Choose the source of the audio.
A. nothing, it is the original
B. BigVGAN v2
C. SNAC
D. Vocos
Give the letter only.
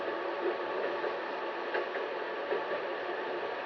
B